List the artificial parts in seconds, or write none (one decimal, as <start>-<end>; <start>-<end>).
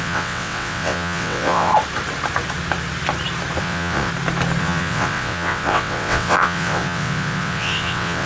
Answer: 0.0-1.7; 3.6-4.1; 4.6-8.3